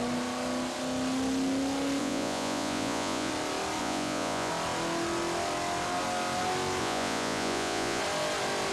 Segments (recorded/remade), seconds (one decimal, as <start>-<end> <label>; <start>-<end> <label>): 0.0-2.0 recorded; 2.0-3.3 remade; 3.3-3.8 recorded; 3.8-4.5 remade; 4.5-6.8 recorded; 6.8-8.0 remade; 8.0-8.7 recorded